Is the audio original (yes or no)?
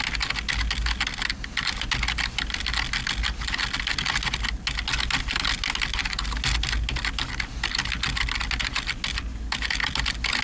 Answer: yes